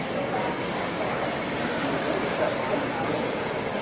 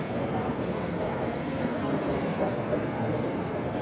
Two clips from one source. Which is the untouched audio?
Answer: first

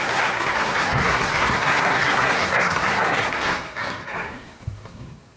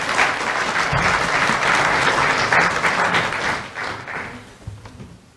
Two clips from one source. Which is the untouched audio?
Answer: second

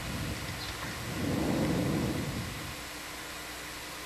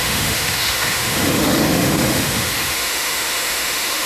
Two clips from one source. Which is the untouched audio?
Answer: first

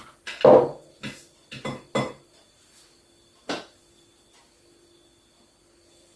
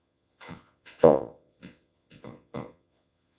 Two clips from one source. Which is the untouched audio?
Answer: first